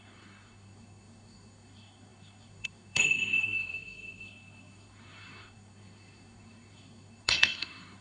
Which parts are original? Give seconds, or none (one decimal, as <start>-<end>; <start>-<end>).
none

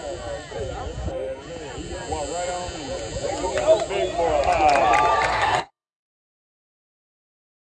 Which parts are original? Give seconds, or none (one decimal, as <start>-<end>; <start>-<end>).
0.0-5.3; 6.1-7.7

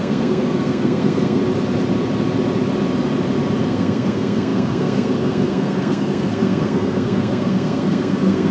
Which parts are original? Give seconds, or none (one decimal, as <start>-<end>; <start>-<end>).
1.4-3.6